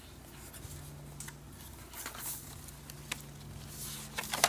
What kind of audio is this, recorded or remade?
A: recorded